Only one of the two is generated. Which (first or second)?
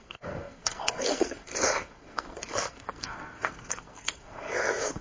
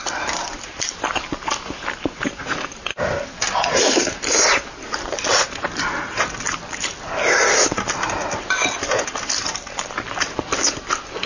first